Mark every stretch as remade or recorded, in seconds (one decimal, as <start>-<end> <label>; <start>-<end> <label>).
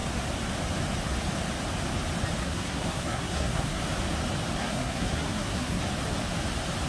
0.0-2.4 recorded; 2.4-3.8 remade; 3.8-4.6 recorded; 4.6-5.8 remade; 5.8-6.9 recorded